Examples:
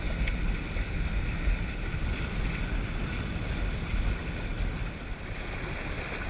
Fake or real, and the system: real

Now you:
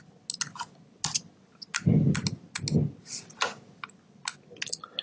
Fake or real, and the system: real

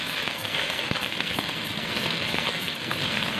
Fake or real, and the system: fake, codec, SNAC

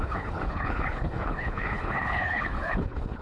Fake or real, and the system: fake, codec, HILCodec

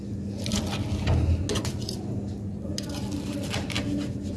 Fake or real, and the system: real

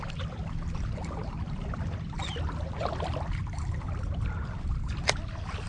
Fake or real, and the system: fake, vocoder, BigVGAN v2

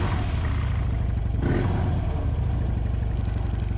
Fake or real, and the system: real